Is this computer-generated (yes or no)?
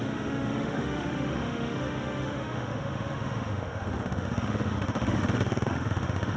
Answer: yes